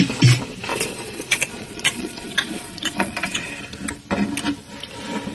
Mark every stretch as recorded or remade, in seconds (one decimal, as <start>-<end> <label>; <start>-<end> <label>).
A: 0.0-0.7 recorded; 0.7-3.5 remade; 3.5-5.3 recorded